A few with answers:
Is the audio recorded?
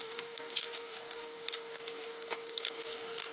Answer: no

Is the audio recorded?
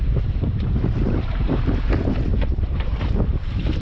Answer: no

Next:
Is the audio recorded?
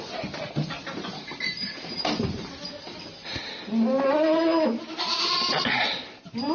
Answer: no